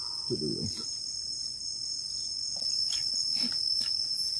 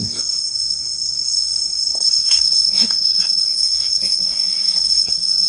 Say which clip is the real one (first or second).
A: first